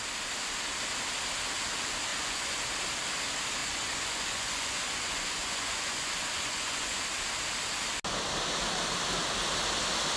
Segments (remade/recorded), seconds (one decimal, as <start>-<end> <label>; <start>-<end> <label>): 0.0-2.1 recorded; 2.1-2.6 remade; 2.6-3.6 recorded; 3.6-7.0 remade; 7.0-10.2 recorded